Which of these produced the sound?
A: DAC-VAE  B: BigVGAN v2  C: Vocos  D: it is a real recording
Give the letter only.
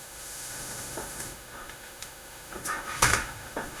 A